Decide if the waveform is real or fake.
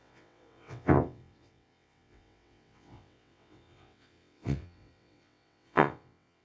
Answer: fake